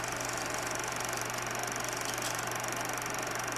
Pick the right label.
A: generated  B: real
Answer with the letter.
B